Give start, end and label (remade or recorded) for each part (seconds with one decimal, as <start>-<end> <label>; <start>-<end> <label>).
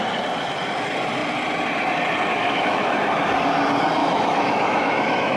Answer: 0.0-2.3 recorded; 2.3-2.9 remade; 2.9-4.0 recorded; 4.0-5.4 remade